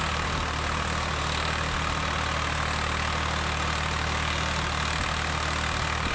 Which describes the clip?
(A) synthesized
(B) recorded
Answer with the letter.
B